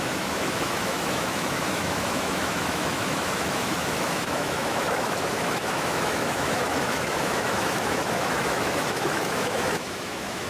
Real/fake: fake